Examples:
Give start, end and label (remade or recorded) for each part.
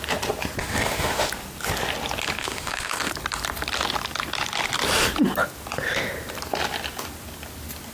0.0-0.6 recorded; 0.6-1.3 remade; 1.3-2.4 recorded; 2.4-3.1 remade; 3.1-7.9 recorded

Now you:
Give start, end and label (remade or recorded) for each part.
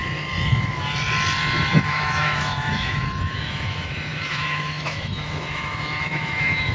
0.0-1.7 recorded; 1.7-6.7 remade